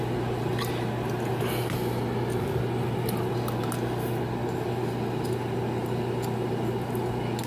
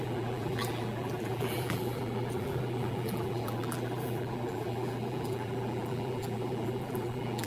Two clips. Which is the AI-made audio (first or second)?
second